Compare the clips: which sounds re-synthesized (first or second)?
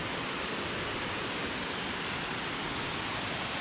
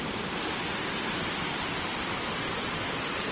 first